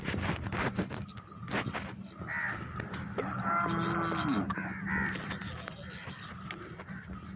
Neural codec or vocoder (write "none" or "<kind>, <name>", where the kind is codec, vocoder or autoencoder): none